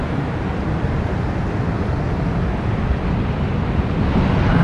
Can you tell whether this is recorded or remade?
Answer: recorded